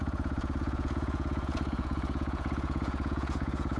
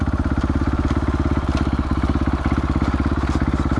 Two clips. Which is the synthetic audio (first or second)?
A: first